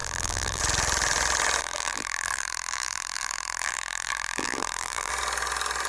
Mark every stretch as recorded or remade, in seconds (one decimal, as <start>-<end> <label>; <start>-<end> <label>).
0.0-0.6 remade; 0.6-1.6 recorded; 1.6-5.1 remade; 5.1-5.9 recorded